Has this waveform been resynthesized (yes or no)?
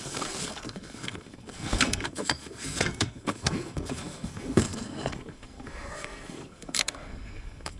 yes